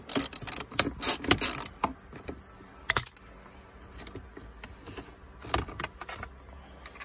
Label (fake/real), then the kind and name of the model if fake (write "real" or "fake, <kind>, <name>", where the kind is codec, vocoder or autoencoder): real